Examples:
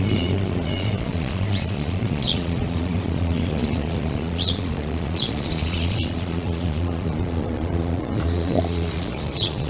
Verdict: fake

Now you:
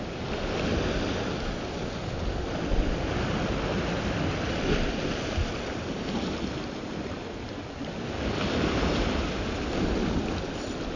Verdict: real